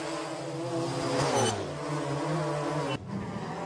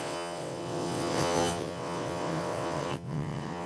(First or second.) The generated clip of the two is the second